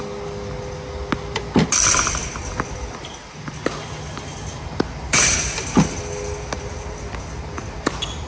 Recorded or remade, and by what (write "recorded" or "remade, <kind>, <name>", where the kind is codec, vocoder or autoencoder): recorded